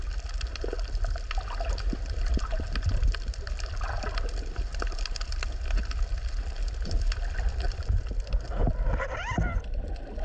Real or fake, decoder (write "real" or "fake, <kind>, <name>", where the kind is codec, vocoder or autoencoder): real